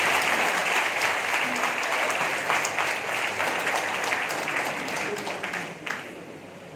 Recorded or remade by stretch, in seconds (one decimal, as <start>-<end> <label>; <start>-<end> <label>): 0.0-0.6 recorded; 0.6-2.9 remade; 2.9-6.8 recorded